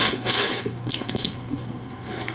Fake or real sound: fake